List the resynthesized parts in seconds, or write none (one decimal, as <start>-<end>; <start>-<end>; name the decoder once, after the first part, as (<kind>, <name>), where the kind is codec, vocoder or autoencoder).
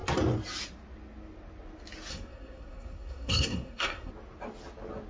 2.1-4.1 (codec, SNAC)